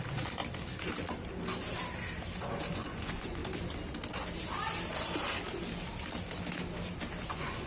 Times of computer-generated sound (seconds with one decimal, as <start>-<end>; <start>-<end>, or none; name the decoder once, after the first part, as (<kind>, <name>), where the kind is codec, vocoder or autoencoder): 0.0-0.4 (vocoder, Vocos); 2.5-3.4; 7.3-7.7

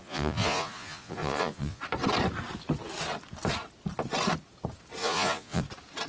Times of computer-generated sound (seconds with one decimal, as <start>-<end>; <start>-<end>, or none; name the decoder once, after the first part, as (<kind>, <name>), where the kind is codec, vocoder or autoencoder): 0.0-1.8 (vocoder, Vocos); 5.0-5.6

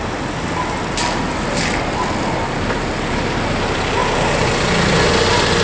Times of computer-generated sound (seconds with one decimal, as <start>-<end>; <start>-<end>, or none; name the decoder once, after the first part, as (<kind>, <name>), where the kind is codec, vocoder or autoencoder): none